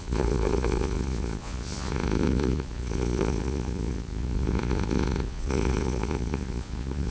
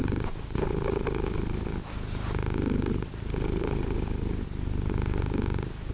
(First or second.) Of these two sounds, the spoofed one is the first